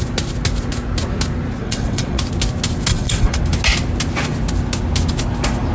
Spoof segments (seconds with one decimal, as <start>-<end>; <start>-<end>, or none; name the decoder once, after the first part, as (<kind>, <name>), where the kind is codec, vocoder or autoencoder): 1.6-2.2 (vocoder, WaveNeXt); 2.9-3.4